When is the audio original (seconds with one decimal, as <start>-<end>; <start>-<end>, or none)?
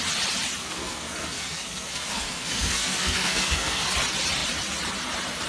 0.0-0.6; 3.9-5.5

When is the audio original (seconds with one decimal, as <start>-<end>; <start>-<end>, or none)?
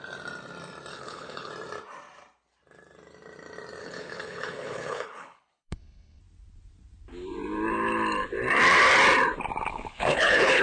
0.0-0.9; 1.5-3.8; 6.2-9.7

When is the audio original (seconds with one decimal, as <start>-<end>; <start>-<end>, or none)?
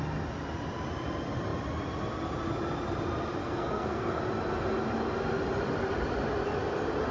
0.0-3.4; 4.2-7.1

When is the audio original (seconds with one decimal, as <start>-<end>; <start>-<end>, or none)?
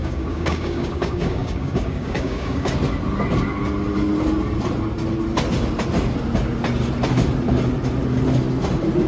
2.7-9.1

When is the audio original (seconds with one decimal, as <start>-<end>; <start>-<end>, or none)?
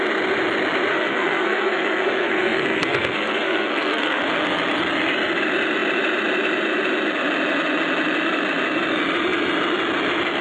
0.0-0.9; 4.2-10.4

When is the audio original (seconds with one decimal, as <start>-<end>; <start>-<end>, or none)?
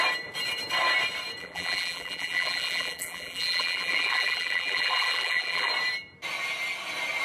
0.0-1.4; 5.7-7.2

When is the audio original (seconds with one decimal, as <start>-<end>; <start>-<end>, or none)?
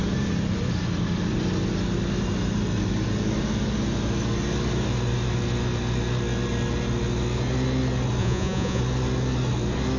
0.0-8.2; 8.8-10.0